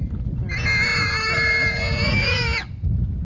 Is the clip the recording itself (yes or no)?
yes